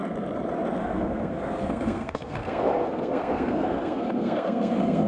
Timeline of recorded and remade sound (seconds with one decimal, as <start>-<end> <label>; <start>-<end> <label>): 0.0-0.8 recorded; 0.8-5.1 remade

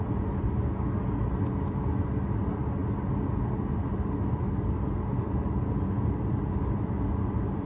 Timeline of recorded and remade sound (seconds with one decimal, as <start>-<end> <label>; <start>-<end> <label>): 0.0-7.7 recorded

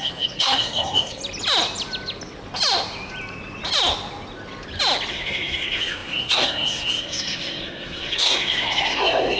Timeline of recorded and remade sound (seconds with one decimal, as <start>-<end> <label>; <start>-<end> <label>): 0.0-1.2 remade; 1.2-5.1 recorded; 5.1-9.4 remade

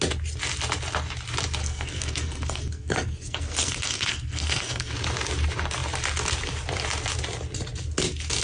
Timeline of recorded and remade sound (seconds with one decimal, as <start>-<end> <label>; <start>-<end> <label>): 0.0-1.6 recorded; 1.6-4.9 remade; 4.9-8.4 recorded

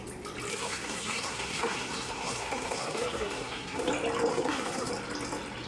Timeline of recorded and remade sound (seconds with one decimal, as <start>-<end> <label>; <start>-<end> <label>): 0.0-0.5 recorded; 0.5-3.9 remade; 3.9-4.3 recorded; 4.3-4.9 remade; 4.9-5.7 recorded

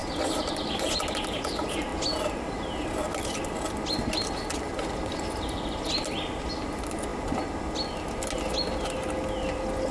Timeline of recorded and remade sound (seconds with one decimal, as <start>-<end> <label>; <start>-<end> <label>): 0.0-9.9 recorded